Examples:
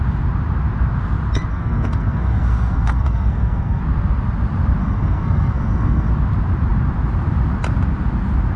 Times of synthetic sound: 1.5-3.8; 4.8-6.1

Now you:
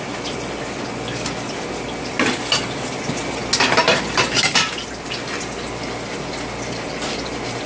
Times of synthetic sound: none

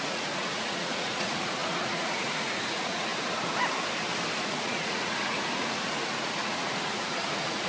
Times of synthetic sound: 0.0-3.1; 4.4-7.7

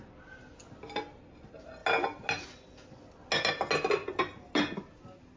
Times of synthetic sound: none

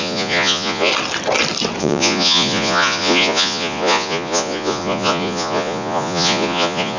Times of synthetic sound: 0.0-0.9; 1.8-7.0